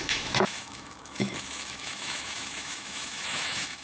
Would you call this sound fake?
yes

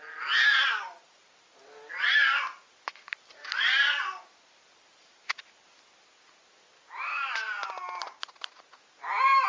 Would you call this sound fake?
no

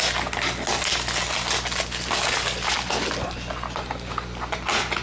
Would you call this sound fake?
no